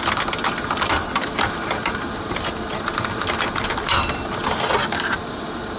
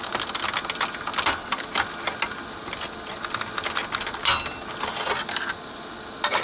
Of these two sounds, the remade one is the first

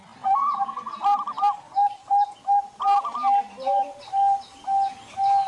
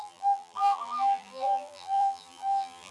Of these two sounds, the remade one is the second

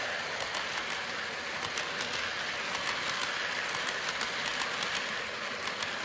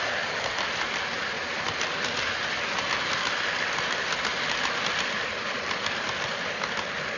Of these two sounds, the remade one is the second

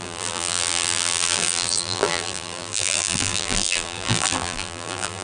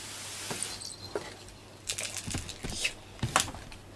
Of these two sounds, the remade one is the first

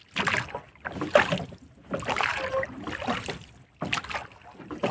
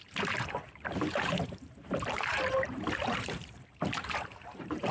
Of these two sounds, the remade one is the second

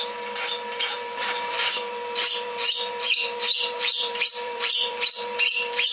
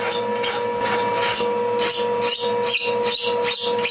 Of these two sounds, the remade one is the first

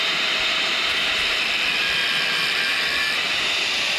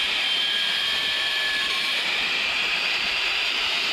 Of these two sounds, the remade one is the second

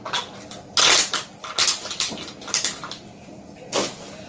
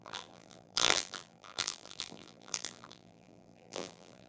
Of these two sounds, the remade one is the second